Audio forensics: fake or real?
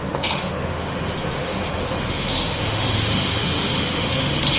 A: fake